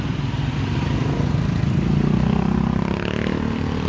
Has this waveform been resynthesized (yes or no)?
no